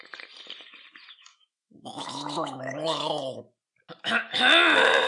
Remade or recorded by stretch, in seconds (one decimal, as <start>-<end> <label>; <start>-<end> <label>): 0.0-1.3 recorded; 1.3-3.4 remade; 3.4-5.1 recorded

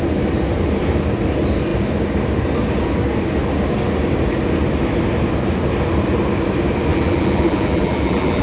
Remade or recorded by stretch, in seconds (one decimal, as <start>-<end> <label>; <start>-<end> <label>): 0.0-6.9 recorded; 6.9-8.4 remade